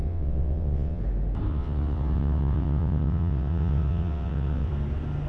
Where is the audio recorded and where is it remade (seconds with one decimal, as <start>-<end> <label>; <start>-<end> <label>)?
0.0-1.0 remade; 1.0-1.5 recorded; 1.5-4.7 remade; 4.7-5.3 recorded